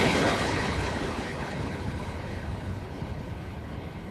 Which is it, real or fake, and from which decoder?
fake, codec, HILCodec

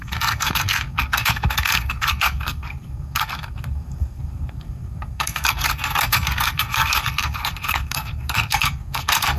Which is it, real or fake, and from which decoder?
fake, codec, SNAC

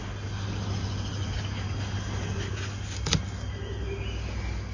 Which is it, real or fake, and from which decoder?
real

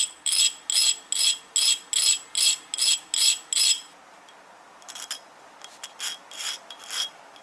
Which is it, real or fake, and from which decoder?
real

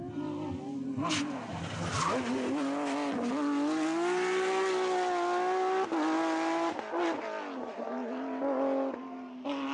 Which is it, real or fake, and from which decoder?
real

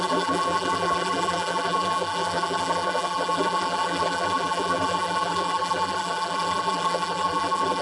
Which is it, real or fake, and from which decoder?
fake, vocoder, BigVGAN v2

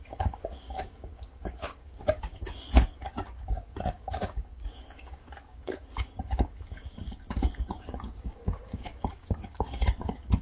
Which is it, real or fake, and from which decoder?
fake, codec, DAC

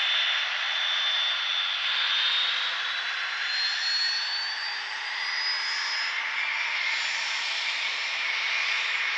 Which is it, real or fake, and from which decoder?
real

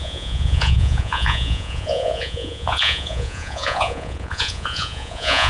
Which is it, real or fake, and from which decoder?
fake, vocoder, Vocos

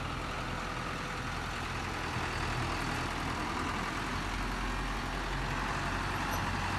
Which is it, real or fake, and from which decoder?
real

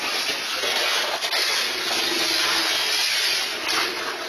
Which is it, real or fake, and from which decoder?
real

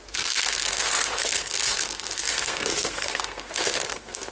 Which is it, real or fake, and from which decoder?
fake, codec, SNAC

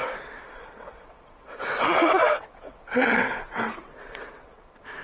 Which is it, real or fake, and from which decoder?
fake, vocoder, WaveNeXt